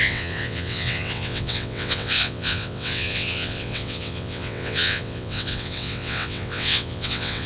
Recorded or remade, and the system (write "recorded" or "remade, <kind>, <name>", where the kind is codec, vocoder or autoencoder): remade, vocoder, WaveNeXt